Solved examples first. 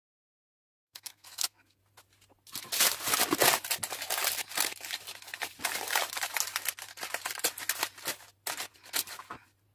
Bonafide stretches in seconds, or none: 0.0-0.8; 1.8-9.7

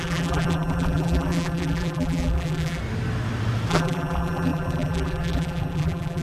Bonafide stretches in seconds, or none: 2.8-3.7

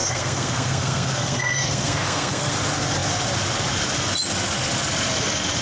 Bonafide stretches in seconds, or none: 2.5-5.6

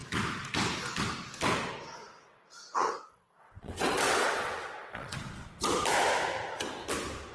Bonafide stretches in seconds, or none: 0.0-2.0; 5.2-7.3

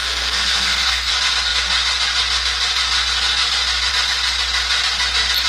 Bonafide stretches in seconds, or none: 1.1-5.5